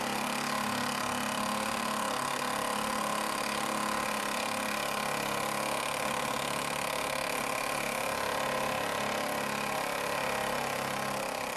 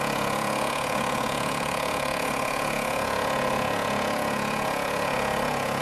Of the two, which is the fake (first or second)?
second